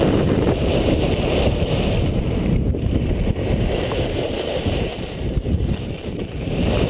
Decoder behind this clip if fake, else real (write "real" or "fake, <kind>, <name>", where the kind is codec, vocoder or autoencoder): fake, vocoder, BigVGAN v2